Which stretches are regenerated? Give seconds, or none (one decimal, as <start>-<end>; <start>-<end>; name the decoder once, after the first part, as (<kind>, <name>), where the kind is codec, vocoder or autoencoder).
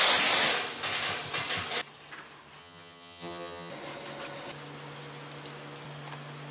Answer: 2.6-3.7 (vocoder, HiFi-GAN)